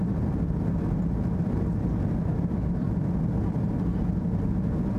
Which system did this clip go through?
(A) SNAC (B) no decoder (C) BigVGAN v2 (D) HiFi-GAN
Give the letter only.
B